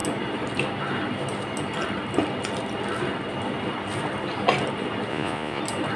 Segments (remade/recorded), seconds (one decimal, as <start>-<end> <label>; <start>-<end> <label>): 0.0-5.1 recorded; 5.1-5.6 remade; 5.6-6.0 recorded